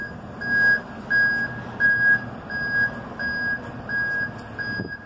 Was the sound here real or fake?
real